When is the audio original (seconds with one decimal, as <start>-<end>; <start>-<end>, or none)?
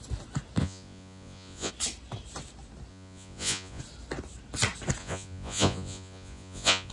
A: 0.0-0.6; 1.7-2.9; 3.8-5.0